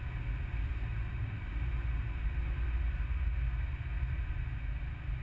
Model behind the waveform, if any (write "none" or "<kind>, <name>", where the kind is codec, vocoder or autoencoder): none